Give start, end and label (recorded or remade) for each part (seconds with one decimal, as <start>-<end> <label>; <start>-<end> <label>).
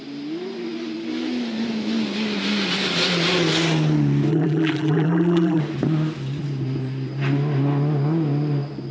0.0-4.3 recorded; 4.3-5.6 remade; 5.6-8.9 recorded